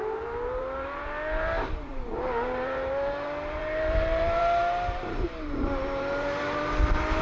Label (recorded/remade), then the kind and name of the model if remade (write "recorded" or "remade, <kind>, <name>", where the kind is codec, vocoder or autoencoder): remade, vocoder, BigVGAN v2